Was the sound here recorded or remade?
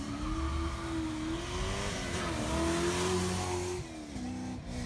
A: recorded